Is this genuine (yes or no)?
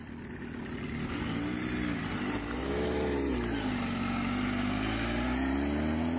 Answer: yes